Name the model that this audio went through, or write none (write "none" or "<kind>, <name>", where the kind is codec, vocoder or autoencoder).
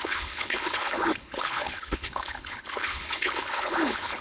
codec, HILCodec